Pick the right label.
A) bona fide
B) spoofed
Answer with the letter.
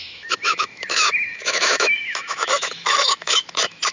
B